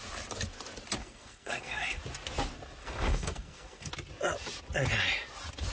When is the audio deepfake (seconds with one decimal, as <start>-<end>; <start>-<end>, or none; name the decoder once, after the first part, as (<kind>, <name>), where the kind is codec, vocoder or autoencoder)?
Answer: 1.0-2.0 (codec, SNAC); 2.8-3.9